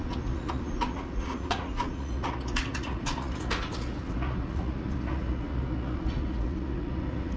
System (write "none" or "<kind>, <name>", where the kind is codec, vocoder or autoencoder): vocoder, Vocos